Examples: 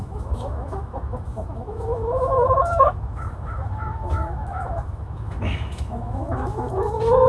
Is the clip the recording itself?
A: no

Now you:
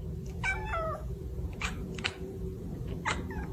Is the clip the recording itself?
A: no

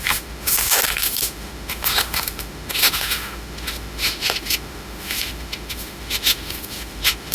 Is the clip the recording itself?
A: no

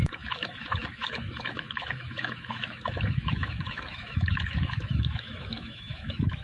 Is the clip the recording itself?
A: no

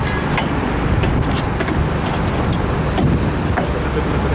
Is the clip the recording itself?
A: yes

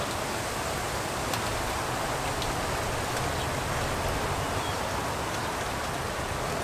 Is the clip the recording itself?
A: yes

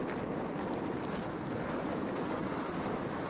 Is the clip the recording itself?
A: yes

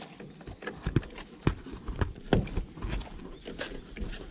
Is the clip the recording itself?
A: yes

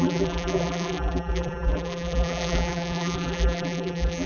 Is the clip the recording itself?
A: no